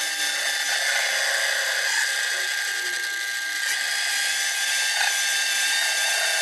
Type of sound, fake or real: real